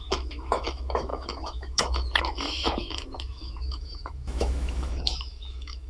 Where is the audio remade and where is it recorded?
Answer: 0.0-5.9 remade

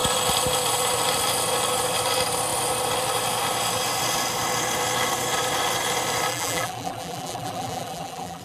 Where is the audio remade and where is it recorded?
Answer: 0.0-6.3 recorded; 6.3-8.4 remade